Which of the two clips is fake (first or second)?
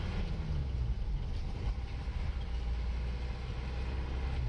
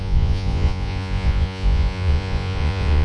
second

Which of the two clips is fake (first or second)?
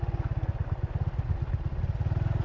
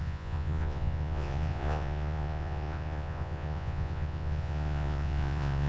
second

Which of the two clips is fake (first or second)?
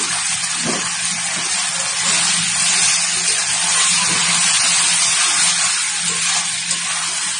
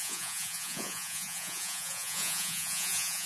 second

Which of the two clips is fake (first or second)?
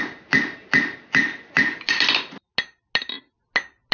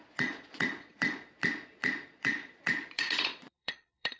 second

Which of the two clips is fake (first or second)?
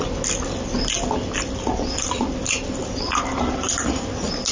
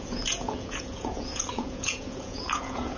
second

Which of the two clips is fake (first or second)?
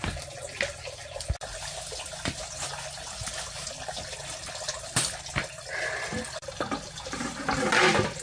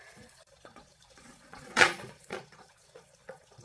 second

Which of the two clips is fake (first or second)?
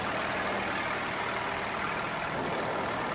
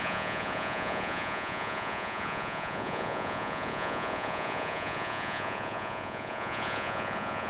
second